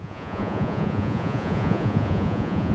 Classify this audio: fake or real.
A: fake